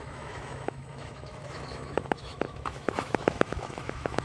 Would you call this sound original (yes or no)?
no